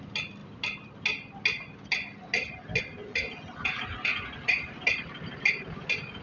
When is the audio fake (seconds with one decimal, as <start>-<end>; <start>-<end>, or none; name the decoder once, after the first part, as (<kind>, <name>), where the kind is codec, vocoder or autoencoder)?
4.1-4.7 (vocoder, Vocos)